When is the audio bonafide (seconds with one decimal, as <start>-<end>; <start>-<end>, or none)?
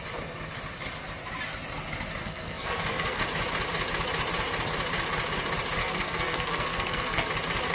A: 0.0-2.2; 3.2-5.8; 7.3-7.7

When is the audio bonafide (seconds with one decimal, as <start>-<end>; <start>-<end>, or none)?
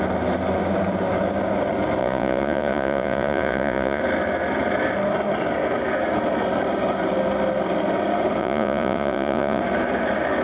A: 0.0-2.0; 4.0-8.4; 9.6-10.4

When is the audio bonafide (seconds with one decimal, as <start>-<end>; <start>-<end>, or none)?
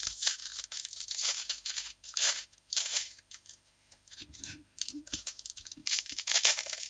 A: none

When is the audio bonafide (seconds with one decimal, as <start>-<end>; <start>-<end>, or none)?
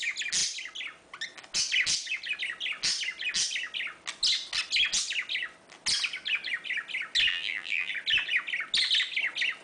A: 0.0-7.3; 7.9-9.6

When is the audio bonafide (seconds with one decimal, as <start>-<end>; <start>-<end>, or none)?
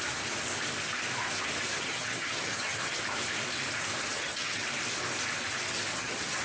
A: 0.0-1.7; 3.0-4.0; 4.6-5.9